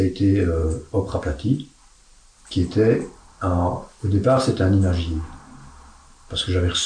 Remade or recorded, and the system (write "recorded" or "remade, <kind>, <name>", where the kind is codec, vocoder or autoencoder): recorded